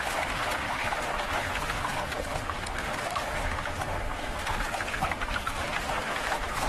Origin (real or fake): fake